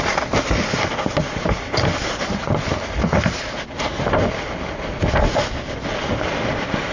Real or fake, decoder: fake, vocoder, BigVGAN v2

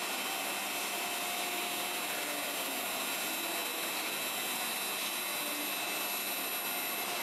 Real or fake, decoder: real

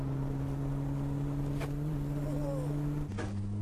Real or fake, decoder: real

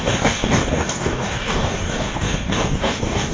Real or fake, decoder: fake, codec, DAC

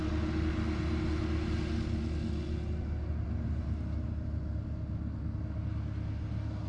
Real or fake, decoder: real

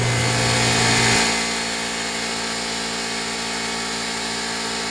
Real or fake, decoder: real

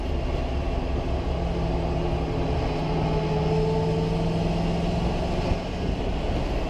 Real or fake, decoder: real